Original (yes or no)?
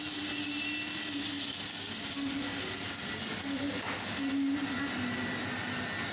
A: yes